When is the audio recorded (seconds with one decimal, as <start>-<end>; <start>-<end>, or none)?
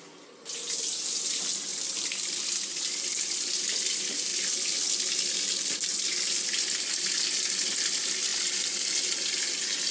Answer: 0.0-9.9